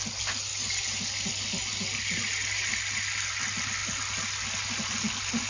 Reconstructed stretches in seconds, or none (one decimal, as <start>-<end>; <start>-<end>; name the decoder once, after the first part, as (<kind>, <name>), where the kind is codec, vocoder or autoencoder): none